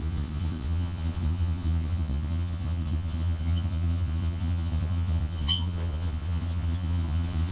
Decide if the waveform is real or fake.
fake